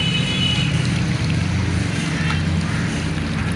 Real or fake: real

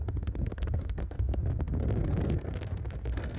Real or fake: fake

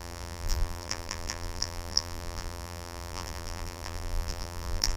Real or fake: fake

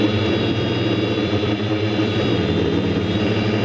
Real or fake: fake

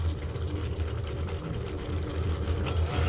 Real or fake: real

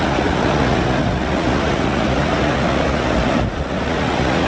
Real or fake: fake